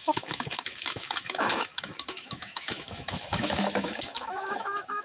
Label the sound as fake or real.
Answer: fake